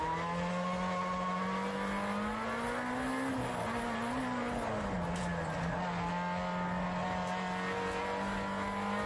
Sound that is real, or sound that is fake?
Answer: real